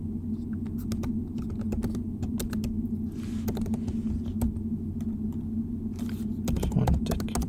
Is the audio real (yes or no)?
yes